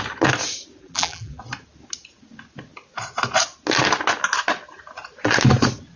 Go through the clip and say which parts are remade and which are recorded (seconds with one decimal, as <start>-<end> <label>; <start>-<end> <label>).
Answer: 0.0-0.8 recorded; 0.8-1.4 remade; 1.4-6.0 recorded